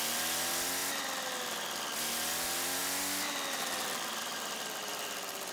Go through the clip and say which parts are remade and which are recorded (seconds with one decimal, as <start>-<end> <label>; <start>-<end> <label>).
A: 0.0-5.5 recorded